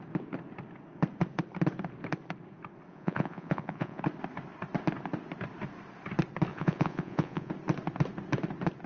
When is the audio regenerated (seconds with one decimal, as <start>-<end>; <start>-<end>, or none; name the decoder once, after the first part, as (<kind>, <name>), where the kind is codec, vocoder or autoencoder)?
2.9-4.0 (vocoder, Vocos); 6.5-7.5